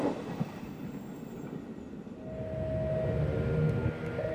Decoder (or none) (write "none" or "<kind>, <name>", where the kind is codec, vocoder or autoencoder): none